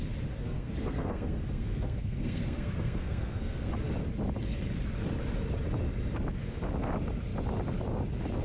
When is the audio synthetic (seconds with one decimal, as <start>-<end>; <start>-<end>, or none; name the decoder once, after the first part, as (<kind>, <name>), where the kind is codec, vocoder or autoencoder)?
0.4-3.7 (codec, SNAC)